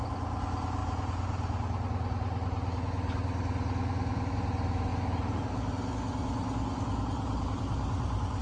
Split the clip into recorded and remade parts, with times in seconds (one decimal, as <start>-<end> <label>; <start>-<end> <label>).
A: 0.0-8.4 recorded